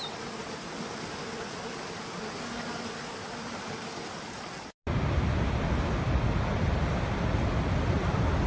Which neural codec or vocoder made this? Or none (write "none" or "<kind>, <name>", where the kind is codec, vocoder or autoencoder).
none